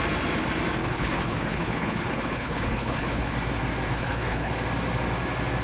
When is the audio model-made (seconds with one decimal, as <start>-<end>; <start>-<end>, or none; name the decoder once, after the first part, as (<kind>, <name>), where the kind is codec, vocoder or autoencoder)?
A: 0.8-3.3 (codec, HILCodec); 3.9-4.5